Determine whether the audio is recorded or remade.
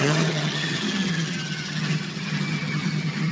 remade